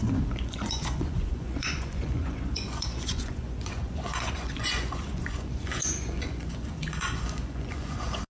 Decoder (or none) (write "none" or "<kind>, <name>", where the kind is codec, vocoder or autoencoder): vocoder, Vocos